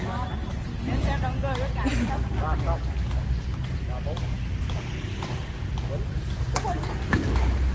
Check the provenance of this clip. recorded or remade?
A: recorded